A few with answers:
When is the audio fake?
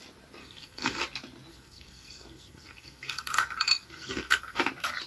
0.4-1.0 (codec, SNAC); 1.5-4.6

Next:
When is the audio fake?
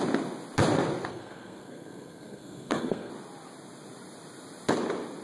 1.1-3.1 (codec, SNAC)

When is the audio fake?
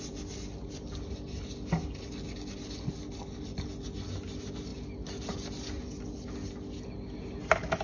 none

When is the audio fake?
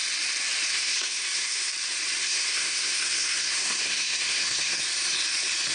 0.7-1.7 (codec, SNAC); 2.2-4.8